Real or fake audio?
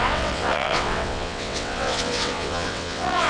fake